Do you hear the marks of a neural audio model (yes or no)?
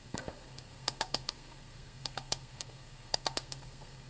yes